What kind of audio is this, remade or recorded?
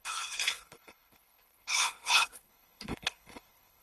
remade